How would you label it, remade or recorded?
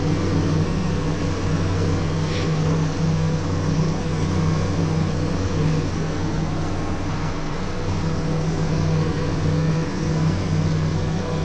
remade